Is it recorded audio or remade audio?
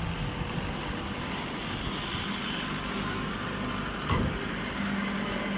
recorded